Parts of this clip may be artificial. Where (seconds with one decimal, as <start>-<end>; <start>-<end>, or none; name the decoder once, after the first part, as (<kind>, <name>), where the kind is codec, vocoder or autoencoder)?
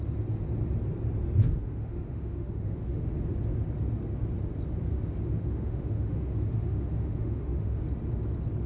1.4-3.1 (autoencoder, DAC-VAE); 4.9-7.8